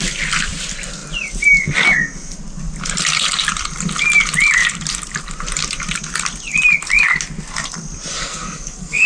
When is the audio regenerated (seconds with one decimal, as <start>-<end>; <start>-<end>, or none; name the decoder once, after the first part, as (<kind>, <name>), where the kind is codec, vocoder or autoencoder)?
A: 8.1-9.1 (codec, SNAC)